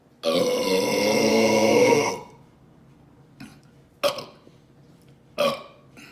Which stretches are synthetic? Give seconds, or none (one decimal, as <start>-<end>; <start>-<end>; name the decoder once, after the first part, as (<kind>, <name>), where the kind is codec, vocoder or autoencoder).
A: 1.3-2.1 (codec, SNAC)